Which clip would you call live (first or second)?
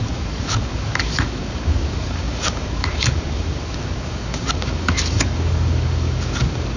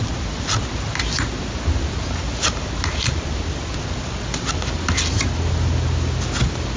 second